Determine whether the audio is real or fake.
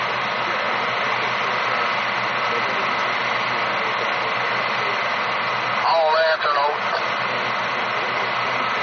real